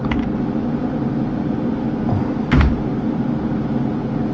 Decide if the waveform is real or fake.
real